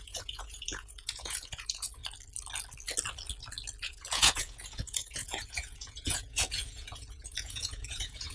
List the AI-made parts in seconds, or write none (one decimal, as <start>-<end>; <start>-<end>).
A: 0.0-2.0; 3.8-8.3